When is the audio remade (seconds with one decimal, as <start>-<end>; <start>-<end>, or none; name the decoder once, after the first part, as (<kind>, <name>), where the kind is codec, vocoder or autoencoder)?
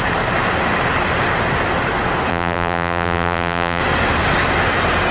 2.3-3.8 (vocoder, BigVGAN v2)